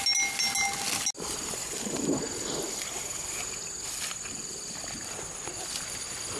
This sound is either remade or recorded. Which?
recorded